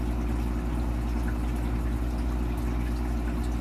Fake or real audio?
real